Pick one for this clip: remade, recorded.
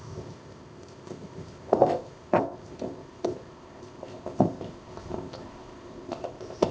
remade